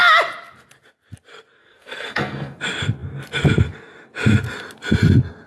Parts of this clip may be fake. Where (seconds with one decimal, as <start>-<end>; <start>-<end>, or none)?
1.6-2.6